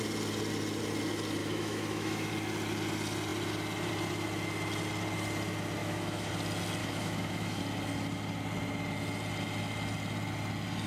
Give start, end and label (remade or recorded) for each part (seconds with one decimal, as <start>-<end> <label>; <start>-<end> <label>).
0.0-1.4 recorded; 1.4-2.3 remade; 2.3-5.8 recorded; 5.8-6.3 remade; 6.3-6.8 recorded; 6.8-7.6 remade; 7.6-10.9 recorded